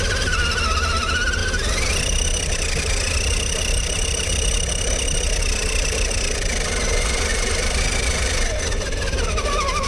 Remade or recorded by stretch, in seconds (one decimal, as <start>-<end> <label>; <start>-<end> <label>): 0.0-7.3 recorded; 7.3-7.8 remade; 7.8-9.9 recorded